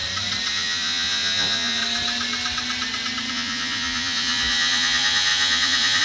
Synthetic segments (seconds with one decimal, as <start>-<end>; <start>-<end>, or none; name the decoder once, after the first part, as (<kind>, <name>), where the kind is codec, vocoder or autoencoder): 0.5-1.8 (vocoder, Vocos); 3.3-6.0